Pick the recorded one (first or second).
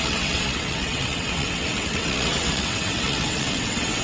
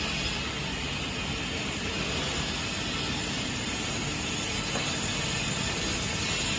second